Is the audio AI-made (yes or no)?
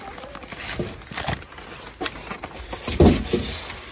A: no